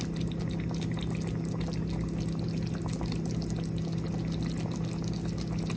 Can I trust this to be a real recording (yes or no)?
yes